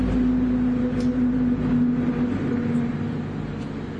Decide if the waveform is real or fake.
real